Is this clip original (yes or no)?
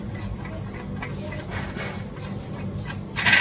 yes